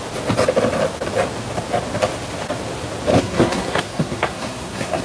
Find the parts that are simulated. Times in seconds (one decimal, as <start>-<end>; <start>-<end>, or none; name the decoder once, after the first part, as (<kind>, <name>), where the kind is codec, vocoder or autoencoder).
3.1-5.0 (codec, SNAC)